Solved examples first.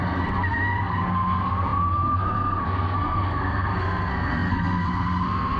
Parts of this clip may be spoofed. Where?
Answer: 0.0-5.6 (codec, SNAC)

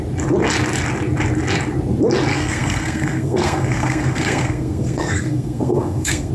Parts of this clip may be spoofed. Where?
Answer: 2.3-6.3 (codec, SNAC)

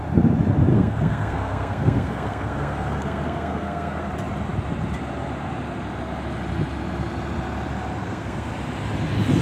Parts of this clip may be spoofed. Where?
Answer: 0.7-4.1 (codec, SNAC); 8.0-8.5

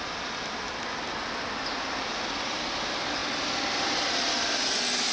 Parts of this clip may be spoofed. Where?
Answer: none